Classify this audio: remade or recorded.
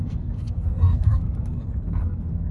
remade